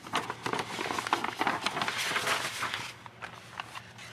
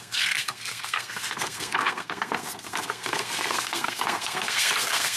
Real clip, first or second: first